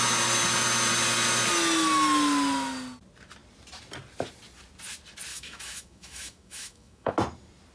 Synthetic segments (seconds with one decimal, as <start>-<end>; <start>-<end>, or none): 5.3-7.1